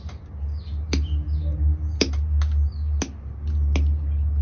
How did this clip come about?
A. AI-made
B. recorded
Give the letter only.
B